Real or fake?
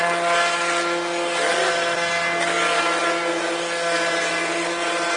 real